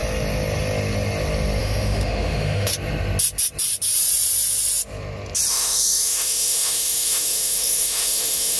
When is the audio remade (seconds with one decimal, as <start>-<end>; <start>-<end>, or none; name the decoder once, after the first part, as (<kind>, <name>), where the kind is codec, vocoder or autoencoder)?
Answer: 1.6-2.7 (autoencoder, DAC-VAE); 5.5-8.6